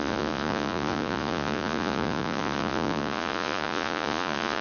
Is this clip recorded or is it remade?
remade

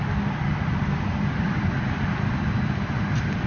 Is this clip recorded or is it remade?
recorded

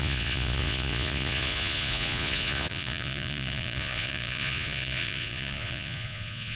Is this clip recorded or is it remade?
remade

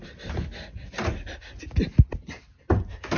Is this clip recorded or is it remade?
recorded